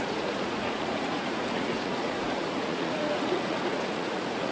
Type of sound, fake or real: fake